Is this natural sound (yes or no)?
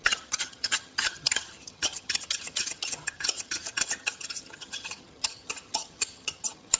no